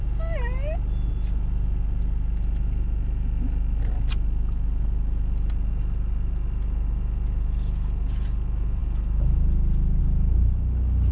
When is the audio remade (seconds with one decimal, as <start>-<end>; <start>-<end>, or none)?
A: none